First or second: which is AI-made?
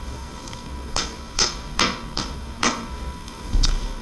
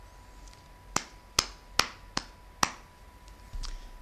first